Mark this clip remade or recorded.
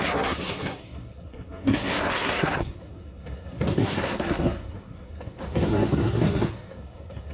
remade